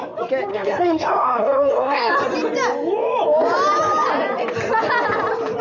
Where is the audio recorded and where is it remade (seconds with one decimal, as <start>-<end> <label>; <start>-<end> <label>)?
0.0-0.5 recorded; 0.5-2.1 remade; 2.1-5.6 recorded